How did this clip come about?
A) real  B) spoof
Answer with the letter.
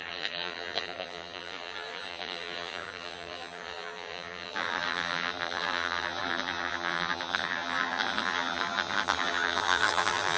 B